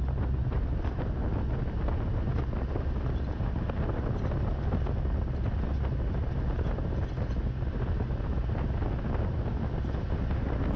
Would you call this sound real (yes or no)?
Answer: yes